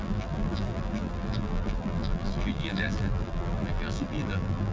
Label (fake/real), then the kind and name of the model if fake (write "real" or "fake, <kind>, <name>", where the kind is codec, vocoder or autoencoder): fake, vocoder, BigVGAN v2